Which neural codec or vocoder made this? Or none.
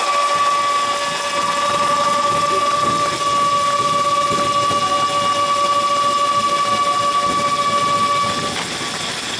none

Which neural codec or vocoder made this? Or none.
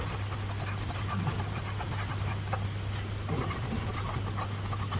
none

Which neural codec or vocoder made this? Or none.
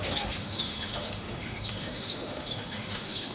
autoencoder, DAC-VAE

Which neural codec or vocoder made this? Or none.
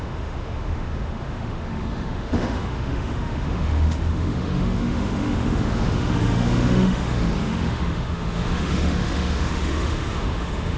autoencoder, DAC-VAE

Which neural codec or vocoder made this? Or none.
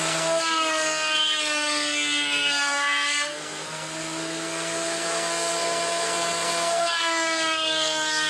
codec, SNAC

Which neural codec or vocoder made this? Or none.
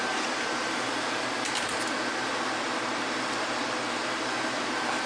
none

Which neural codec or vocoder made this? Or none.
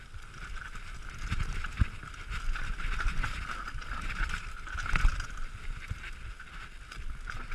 none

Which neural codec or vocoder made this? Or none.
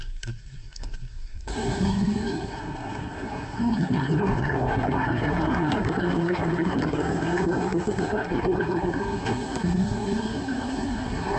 codec, SNAC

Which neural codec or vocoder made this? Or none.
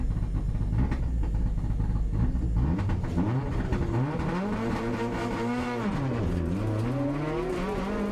none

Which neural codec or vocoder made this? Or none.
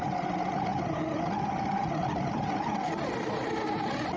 none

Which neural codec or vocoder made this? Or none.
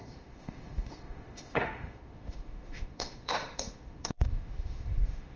autoencoder, DAC-VAE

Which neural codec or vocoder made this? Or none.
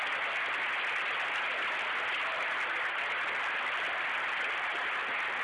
none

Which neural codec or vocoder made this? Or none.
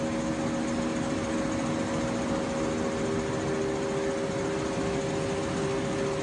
none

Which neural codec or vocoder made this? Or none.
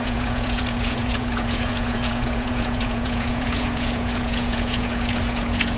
vocoder, Vocos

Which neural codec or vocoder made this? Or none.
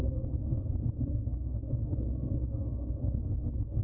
codec, SNAC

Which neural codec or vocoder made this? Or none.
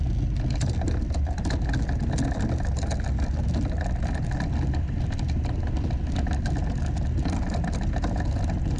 none